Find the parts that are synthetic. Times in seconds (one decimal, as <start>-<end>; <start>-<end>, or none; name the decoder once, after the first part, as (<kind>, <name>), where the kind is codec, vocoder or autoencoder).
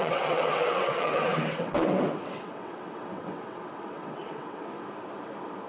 0.0-4.7 (vocoder, WaveNeXt)